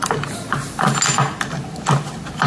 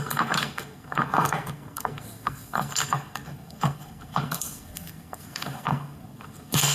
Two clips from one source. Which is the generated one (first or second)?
second